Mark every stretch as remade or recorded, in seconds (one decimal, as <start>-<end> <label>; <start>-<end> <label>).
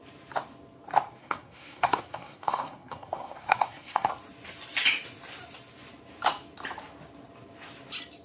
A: 0.0-1.2 recorded; 1.2-4.1 remade; 4.1-8.2 recorded